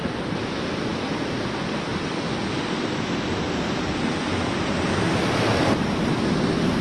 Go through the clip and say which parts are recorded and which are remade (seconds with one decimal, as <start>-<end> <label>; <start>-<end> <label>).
0.0-6.8 recorded